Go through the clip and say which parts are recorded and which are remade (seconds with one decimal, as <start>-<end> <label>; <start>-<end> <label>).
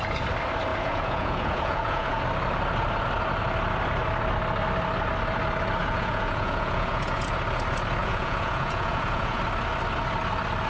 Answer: 0.0-0.7 recorded; 0.7-2.2 remade; 2.2-5.8 recorded; 5.8-7.3 remade; 7.3-8.0 recorded; 8.0-9.4 remade; 9.4-10.7 recorded